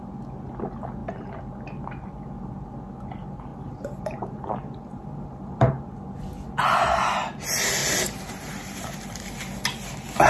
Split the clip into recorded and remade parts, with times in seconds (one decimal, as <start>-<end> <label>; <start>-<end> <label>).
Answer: 0.0-3.5 recorded; 3.5-4.4 remade; 4.4-4.9 recorded; 4.9-5.7 remade; 5.7-7.8 recorded; 7.8-8.8 remade; 8.8-10.3 recorded